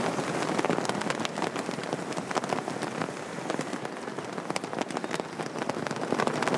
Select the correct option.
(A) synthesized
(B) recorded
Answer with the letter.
B